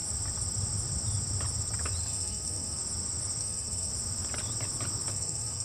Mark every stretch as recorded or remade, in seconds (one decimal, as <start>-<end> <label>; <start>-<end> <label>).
0.0-2.0 recorded; 2.0-2.8 remade; 2.8-3.4 recorded; 3.4-3.9 remade; 3.9-5.1 recorded; 5.1-5.6 remade

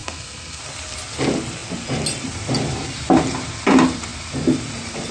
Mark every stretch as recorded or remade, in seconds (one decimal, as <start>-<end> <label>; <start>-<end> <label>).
0.0-0.6 remade; 0.6-5.1 recorded

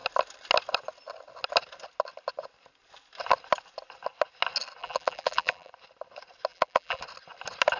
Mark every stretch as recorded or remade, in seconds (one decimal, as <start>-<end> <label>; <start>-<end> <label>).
0.0-4.8 recorded; 4.8-5.7 remade; 5.7-6.5 recorded; 6.5-7.0 remade; 7.0-7.8 recorded